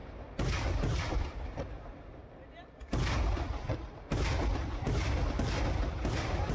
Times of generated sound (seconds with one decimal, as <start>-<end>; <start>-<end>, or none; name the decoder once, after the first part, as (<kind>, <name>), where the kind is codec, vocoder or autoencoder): 1.1-2.2 (vocoder, BigVGAN v2); 6.1-6.5